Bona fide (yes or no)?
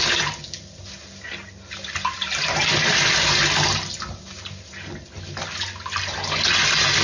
yes